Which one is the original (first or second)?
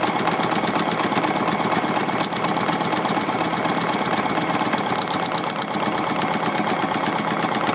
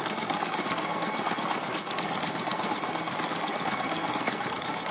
first